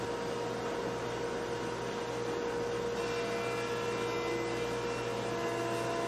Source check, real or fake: real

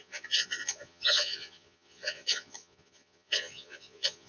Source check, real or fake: fake